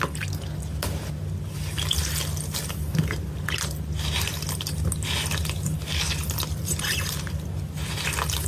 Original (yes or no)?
yes